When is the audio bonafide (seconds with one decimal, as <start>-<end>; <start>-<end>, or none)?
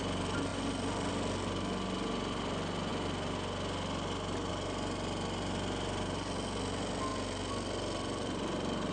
0.0-7.1